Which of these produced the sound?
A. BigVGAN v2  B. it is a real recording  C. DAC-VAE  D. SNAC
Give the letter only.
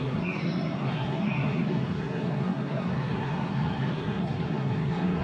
D